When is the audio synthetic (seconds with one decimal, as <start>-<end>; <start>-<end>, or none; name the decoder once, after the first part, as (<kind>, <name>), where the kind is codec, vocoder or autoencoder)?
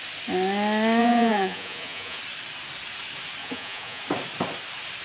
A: 1.0-2.2 (vocoder, Vocos); 3.4-4.0